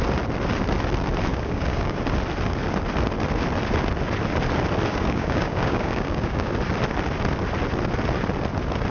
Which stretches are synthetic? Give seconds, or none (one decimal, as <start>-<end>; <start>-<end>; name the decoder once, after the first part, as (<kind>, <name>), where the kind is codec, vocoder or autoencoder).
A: 1.3-2.0 (codec, DAC); 4.9-6.5